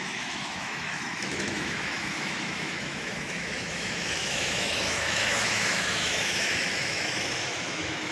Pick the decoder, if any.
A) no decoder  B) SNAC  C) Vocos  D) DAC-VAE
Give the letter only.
D